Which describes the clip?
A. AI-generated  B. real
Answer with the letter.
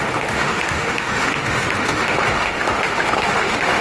A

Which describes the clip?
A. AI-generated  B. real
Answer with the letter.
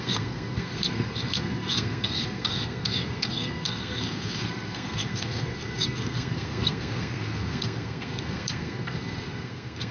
A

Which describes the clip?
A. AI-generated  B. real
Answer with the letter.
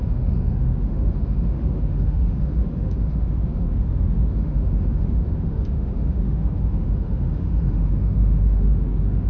A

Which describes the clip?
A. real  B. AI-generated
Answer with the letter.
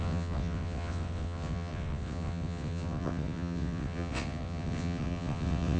B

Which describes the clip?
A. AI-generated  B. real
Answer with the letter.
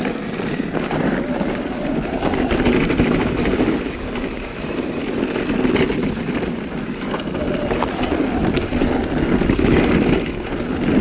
B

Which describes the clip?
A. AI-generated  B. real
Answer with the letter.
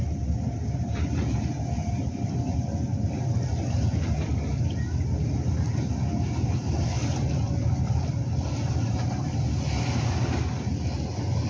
B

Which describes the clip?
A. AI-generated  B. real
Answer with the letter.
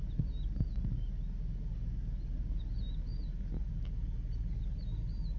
B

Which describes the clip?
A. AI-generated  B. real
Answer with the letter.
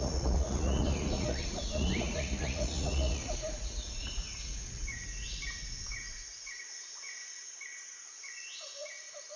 A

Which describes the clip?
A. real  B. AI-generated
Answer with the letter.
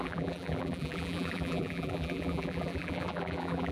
B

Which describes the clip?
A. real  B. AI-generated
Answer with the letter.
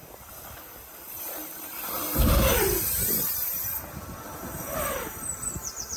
A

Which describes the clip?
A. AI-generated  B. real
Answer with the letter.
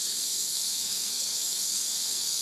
A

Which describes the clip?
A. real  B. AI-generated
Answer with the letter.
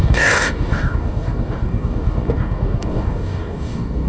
B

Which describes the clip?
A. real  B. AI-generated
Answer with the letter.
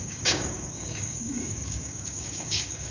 B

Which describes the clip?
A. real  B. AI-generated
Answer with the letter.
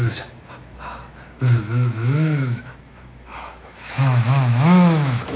B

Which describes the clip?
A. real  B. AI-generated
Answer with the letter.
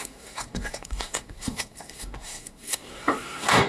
B